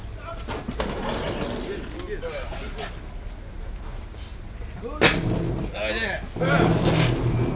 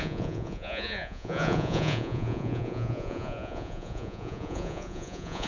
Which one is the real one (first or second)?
first